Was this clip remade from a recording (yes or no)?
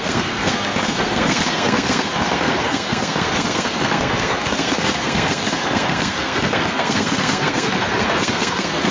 yes